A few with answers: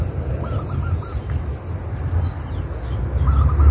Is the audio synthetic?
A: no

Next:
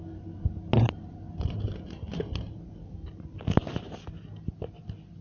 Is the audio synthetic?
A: no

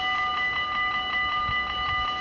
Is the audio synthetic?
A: no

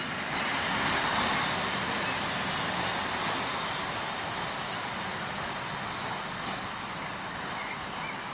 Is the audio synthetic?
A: no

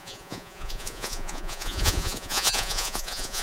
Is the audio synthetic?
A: yes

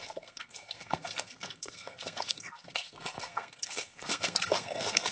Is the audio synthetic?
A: yes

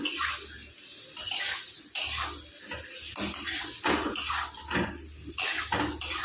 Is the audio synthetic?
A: no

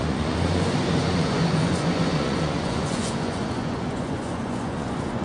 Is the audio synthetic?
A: yes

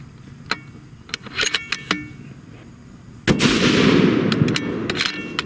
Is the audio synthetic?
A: no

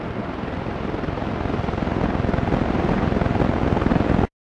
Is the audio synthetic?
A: no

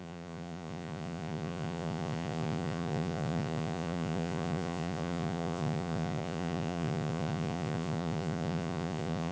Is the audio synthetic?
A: yes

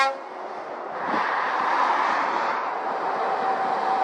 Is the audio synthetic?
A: no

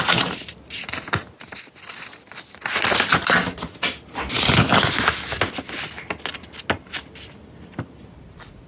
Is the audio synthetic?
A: no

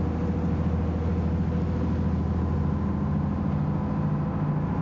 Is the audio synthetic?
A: no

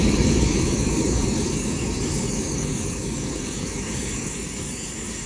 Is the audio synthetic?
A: yes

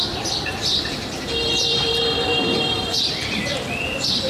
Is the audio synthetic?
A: yes